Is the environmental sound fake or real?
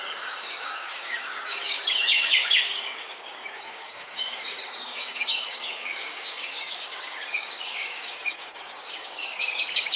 fake